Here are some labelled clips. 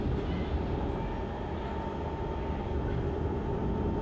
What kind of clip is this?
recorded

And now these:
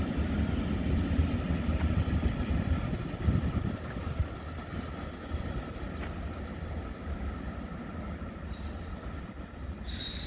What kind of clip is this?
recorded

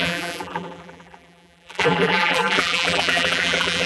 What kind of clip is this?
remade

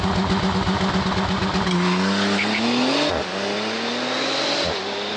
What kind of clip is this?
recorded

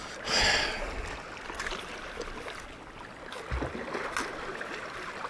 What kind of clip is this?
recorded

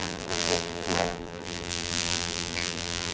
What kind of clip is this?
remade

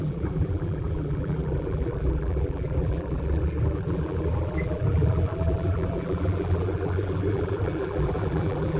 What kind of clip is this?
remade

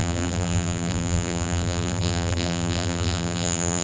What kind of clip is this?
remade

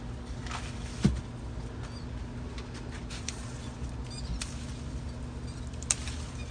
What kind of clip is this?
recorded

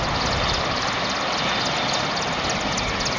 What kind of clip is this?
recorded